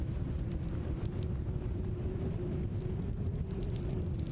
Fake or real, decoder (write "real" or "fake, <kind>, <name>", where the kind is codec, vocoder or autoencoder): real